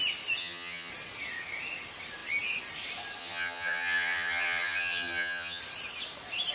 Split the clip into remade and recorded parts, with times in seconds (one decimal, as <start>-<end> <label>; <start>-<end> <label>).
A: 0.0-0.4 recorded; 0.4-0.9 remade; 0.9-3.2 recorded; 3.2-5.6 remade; 5.6-6.5 recorded